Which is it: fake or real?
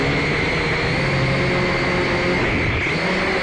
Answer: real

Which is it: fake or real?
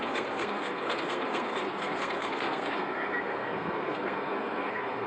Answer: fake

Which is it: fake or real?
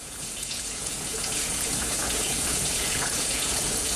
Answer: fake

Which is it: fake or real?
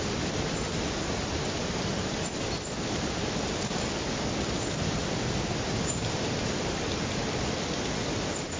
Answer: real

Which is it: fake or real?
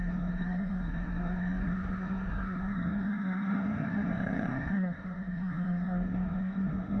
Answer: fake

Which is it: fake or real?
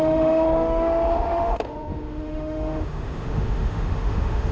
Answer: fake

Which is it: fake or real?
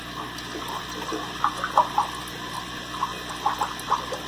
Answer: real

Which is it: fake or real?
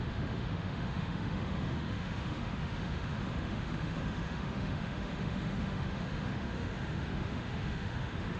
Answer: fake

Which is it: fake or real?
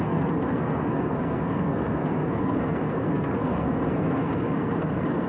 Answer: fake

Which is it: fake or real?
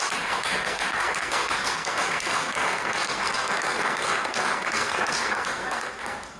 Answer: fake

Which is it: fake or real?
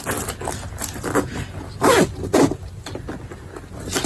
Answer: real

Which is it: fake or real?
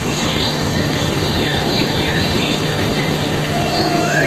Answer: fake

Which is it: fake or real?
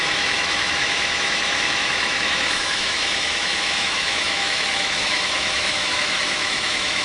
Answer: fake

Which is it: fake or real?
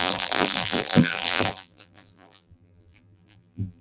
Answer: fake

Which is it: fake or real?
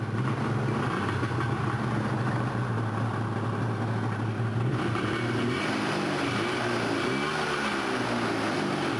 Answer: real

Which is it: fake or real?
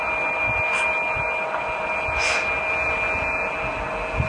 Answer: real